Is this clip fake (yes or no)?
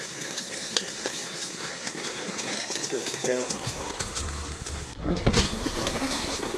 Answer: yes